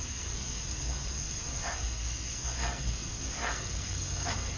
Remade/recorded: remade